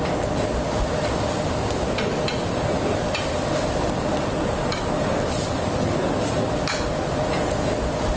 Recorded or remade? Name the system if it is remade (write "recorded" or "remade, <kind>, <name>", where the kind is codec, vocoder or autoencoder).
recorded